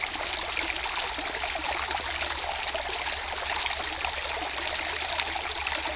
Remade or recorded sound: recorded